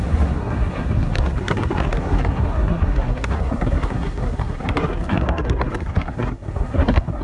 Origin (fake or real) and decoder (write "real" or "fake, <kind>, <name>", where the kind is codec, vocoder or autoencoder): fake, codec, SNAC